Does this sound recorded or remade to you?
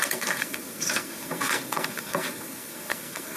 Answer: remade